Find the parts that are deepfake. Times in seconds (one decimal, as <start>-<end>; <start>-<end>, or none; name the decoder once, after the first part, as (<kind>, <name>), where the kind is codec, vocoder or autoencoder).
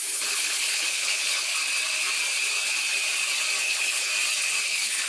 0.0-1.5 (codec, HILCodec); 3.6-4.1; 4.6-5.1